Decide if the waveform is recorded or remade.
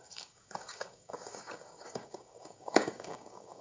remade